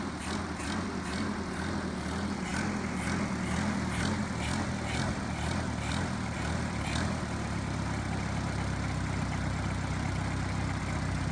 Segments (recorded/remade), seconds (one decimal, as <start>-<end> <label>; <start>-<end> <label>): 0.0-11.3 recorded